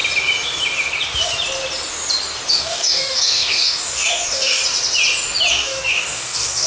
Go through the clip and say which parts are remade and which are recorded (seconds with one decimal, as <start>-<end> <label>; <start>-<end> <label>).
0.0-2.5 recorded; 2.5-4.6 remade; 4.6-5.5 recorded; 5.5-6.7 remade